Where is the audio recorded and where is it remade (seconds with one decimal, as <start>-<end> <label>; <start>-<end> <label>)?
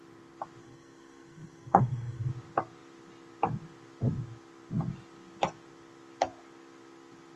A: 0.0-0.6 recorded; 0.6-2.3 remade; 2.3-7.4 recorded